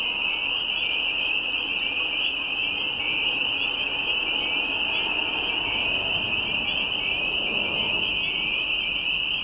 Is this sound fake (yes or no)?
no